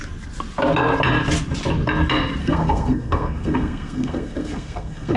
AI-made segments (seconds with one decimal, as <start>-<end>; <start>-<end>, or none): 2.4-5.2